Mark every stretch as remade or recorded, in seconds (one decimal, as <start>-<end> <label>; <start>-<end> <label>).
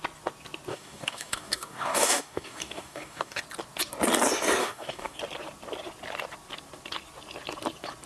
0.0-0.7 recorded; 0.7-3.4 remade; 3.4-4.6 recorded; 4.6-5.2 remade; 5.2-8.1 recorded